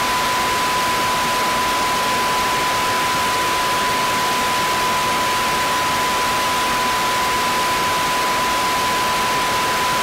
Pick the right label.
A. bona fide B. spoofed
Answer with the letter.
A